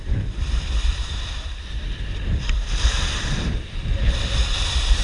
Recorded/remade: remade